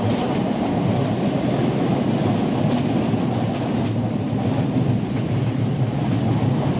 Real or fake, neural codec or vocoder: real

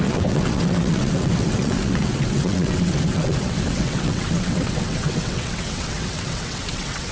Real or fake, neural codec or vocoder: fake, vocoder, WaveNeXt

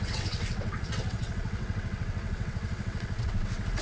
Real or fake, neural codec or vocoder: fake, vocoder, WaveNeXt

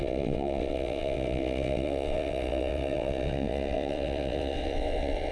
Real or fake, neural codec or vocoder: fake, vocoder, WaveNeXt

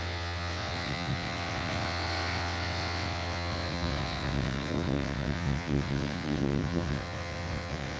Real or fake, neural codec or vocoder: fake, vocoder, WaveNeXt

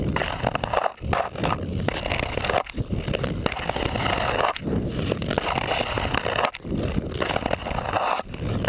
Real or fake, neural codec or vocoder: real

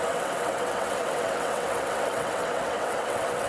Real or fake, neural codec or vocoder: fake, vocoder, WaveNeXt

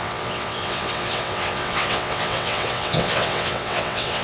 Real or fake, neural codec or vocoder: fake, vocoder, WaveNeXt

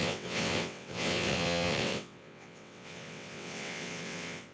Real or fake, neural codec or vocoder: fake, vocoder, WaveNeXt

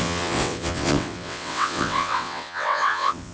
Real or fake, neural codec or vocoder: fake, vocoder, WaveNeXt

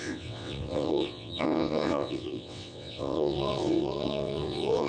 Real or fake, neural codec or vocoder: fake, vocoder, WaveNeXt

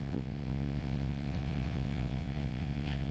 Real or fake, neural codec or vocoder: fake, vocoder, WaveNeXt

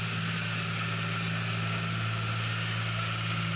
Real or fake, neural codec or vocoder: real